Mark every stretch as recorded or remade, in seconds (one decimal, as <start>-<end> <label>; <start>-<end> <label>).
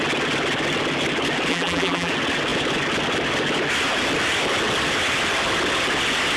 0.0-1.5 recorded; 1.5-2.1 remade; 2.1-6.4 recorded